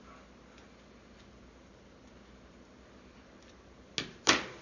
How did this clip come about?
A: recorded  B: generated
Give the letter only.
A